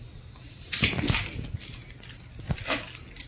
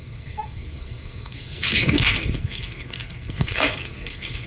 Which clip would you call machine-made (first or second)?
second